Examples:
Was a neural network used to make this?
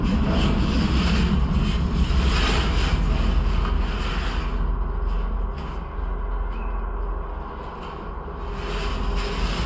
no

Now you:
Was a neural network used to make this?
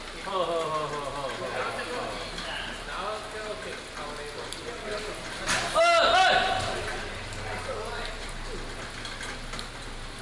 no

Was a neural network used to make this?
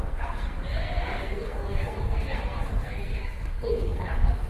yes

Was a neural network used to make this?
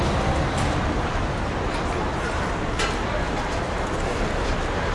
no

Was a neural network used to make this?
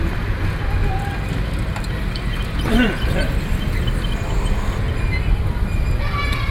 no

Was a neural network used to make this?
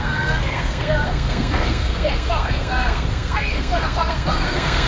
yes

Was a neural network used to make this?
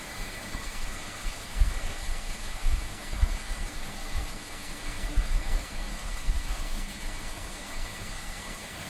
yes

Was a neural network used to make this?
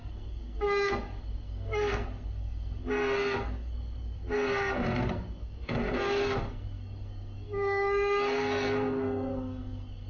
yes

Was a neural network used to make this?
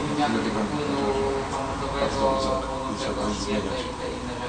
no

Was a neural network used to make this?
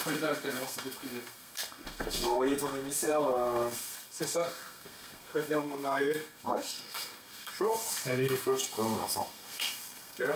yes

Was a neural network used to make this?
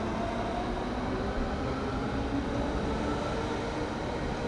no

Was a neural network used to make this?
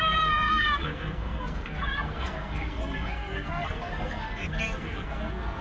yes